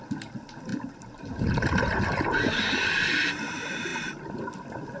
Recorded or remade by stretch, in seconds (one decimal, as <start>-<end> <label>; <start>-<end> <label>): 0.0-0.7 recorded; 0.7-2.9 remade; 2.9-5.0 recorded